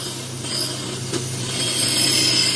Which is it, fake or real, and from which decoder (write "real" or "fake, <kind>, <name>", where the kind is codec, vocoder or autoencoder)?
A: real